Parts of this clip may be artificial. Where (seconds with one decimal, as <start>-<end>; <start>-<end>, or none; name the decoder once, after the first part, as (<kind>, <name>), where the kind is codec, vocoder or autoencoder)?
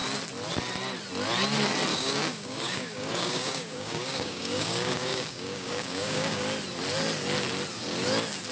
1.9-6.4 (codec, DAC)